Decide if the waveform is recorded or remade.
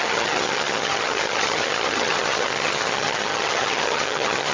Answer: remade